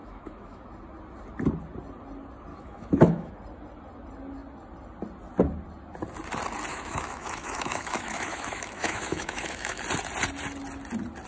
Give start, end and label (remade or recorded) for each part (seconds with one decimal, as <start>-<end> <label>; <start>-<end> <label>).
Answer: 0.0-0.6 remade; 0.6-2.5 recorded; 2.5-3.3 remade; 3.3-6.7 recorded; 6.7-9.8 remade; 9.8-11.3 recorded